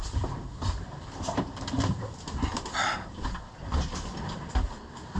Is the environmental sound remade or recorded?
remade